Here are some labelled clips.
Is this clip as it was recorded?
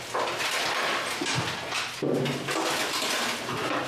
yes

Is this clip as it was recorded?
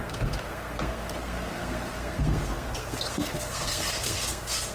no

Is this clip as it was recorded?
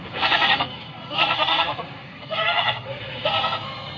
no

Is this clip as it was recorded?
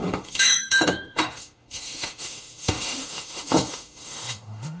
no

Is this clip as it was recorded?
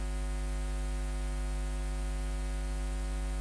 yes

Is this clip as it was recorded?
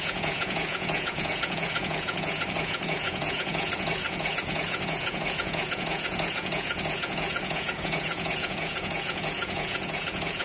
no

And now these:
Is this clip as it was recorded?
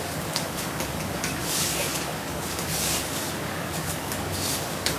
no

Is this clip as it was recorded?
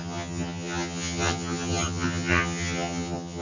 no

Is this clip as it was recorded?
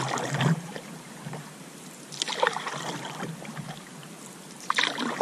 no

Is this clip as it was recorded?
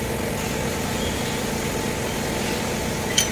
yes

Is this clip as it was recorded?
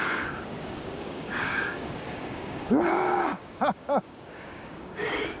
no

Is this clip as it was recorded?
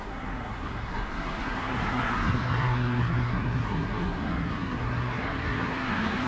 no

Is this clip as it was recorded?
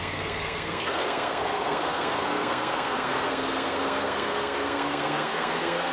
no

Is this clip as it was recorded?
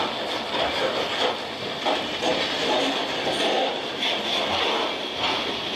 yes